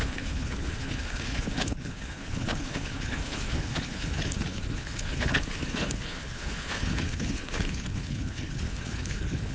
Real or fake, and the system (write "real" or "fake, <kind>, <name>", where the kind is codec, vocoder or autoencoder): fake, codec, HILCodec